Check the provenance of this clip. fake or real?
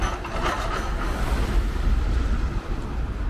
real